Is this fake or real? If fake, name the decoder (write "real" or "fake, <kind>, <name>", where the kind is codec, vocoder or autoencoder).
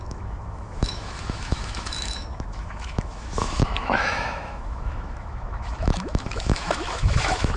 fake, autoencoder, DAC-VAE